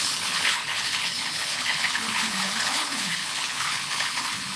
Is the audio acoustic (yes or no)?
no